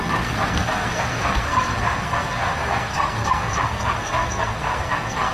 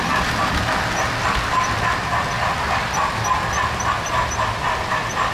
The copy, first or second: first